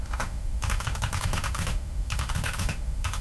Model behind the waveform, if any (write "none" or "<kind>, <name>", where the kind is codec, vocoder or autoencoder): autoencoder, DAC-VAE